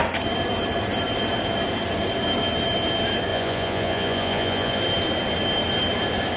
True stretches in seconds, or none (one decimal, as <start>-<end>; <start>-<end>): 0.0-3.3; 4.8-6.4